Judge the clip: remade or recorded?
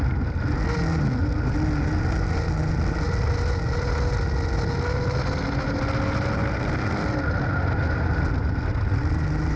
recorded